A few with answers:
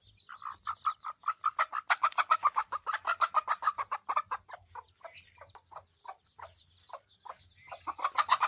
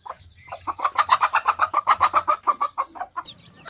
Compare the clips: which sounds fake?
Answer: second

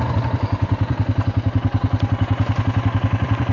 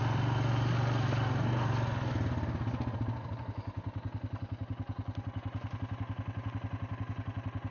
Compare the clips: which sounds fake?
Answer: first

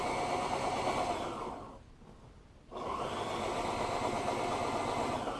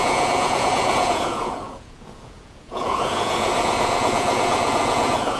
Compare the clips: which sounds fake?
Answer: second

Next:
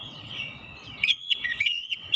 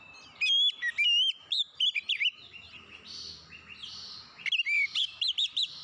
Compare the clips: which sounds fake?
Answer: first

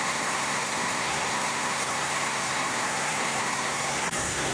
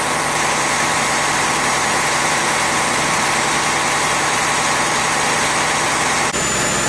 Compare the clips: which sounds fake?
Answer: first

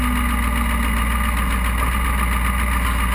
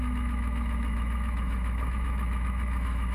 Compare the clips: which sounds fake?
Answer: second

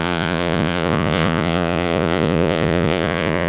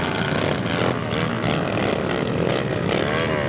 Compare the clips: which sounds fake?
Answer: first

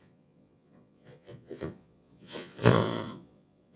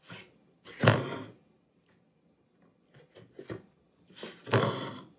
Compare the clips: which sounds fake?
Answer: first